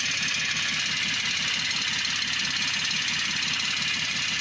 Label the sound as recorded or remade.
recorded